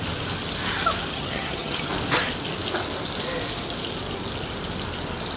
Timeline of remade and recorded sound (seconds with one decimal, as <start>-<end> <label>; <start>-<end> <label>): 0.0-1.1 recorded; 1.1-1.9 remade; 1.9-5.4 recorded